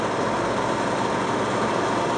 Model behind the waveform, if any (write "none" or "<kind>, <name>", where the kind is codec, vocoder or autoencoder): none